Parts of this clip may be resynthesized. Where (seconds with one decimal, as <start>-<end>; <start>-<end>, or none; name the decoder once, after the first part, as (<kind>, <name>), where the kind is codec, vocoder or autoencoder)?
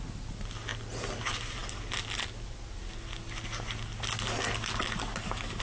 none